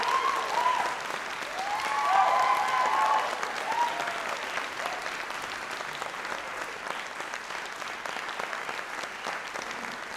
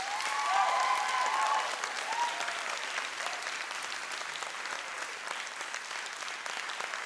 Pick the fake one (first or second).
second